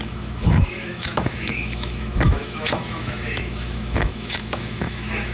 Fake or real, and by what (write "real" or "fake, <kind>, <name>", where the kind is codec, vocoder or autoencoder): fake, autoencoder, DAC-VAE